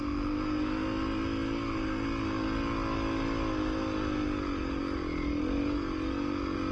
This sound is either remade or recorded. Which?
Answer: recorded